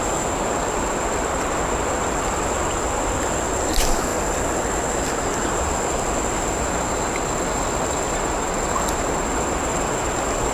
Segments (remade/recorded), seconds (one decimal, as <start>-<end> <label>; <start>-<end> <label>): 0.0-10.5 recorded